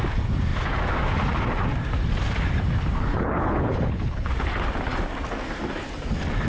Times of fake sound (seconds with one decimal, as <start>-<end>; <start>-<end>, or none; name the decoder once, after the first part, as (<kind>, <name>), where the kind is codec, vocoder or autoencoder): 3.1-4.3 (codec, HILCodec)